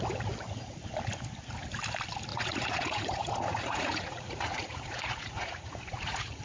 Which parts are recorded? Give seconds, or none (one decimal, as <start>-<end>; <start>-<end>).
0.0-2.3